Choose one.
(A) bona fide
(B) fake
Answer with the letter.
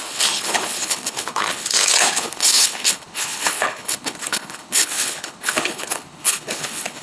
B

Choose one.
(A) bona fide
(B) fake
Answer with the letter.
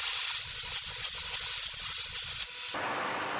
A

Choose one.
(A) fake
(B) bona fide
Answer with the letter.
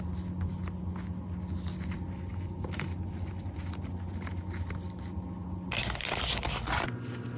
B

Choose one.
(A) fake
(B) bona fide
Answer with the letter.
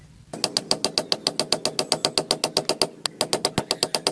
B